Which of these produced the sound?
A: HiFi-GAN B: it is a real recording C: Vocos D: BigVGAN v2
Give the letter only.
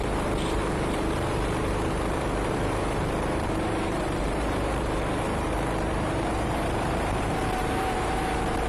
D